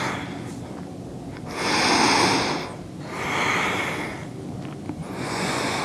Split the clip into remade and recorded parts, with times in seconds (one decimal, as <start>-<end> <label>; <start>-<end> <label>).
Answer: 0.0-5.0 recorded; 5.0-5.8 remade